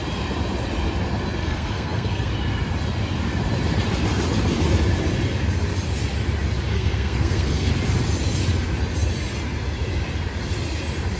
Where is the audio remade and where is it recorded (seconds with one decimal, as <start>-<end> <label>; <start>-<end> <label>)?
0.0-1.4 recorded; 1.4-2.3 remade; 2.3-6.7 recorded; 6.7-7.7 remade; 7.7-11.2 recorded